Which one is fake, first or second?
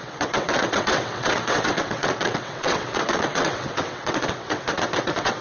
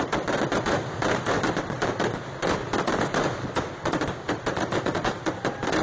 first